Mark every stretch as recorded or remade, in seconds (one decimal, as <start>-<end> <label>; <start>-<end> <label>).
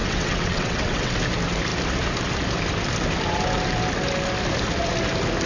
0.0-1.1 remade; 1.1-5.5 recorded